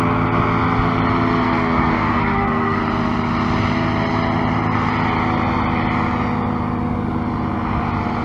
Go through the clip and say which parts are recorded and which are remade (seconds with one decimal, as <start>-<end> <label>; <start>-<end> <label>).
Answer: 0.0-1.4 recorded; 1.4-2.8 remade; 2.8-8.2 recorded